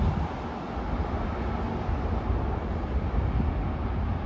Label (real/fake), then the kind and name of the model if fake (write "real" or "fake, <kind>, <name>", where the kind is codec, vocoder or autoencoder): real